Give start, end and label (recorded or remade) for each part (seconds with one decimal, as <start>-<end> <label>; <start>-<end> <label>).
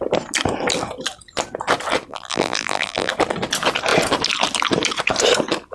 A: 0.0-2.1 recorded; 2.1-3.1 remade; 3.1-5.7 recorded